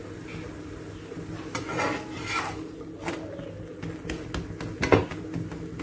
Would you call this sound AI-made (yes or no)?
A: no